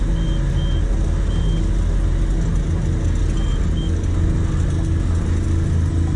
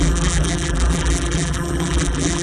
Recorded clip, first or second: first